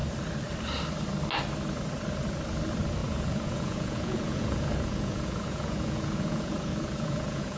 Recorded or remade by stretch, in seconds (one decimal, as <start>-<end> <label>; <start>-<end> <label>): 0.0-3.0 recorded; 3.0-7.6 remade